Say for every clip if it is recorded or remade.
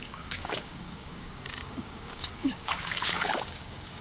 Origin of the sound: remade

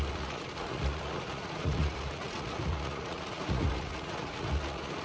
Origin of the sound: remade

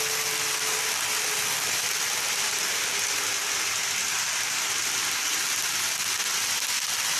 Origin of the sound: recorded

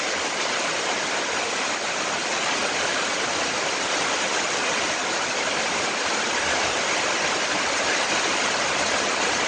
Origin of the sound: recorded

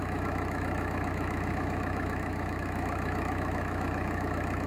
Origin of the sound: remade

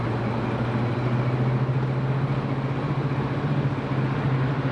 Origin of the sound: recorded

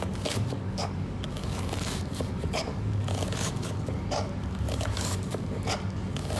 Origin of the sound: remade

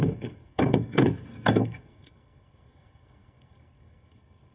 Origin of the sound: remade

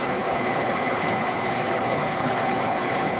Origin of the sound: remade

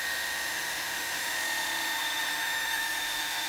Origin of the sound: remade